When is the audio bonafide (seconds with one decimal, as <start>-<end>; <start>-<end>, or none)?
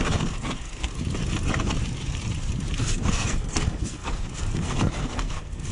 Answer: 0.9-2.8